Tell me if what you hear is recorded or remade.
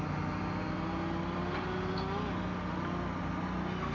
recorded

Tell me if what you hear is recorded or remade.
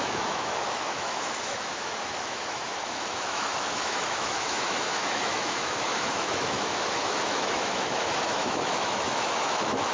remade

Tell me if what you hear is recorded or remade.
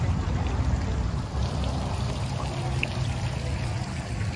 remade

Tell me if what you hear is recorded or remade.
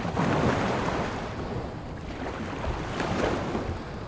recorded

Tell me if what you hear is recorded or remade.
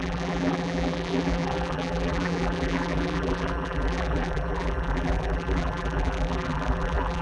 remade